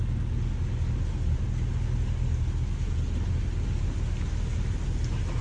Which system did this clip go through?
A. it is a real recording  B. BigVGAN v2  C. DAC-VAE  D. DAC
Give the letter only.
A